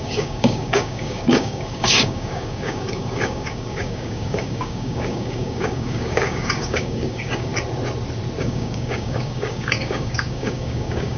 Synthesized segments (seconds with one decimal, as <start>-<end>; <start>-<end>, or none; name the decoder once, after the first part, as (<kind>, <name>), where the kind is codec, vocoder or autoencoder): 0.0-7.5 (codec, DAC); 8.4-11.2